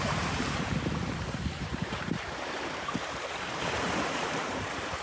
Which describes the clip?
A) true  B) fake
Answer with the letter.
B